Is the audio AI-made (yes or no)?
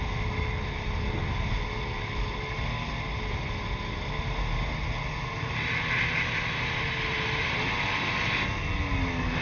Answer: no